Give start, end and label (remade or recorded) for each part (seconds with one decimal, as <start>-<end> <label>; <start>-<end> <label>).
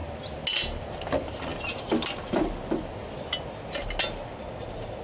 0.0-5.0 recorded